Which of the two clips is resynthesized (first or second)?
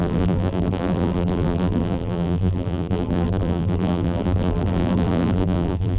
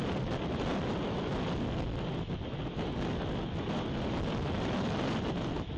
first